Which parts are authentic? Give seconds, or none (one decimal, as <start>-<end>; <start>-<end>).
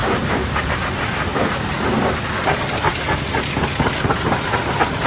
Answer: 0.8-5.1